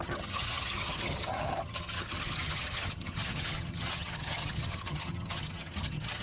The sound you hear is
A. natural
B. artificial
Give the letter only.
B